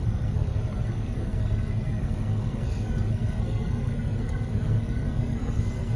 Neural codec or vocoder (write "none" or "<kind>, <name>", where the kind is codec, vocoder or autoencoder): codec, SNAC